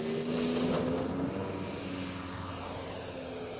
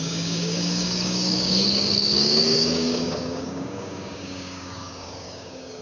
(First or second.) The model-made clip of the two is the second